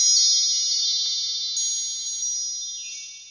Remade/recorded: recorded